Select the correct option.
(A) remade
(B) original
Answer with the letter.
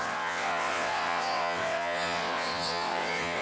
A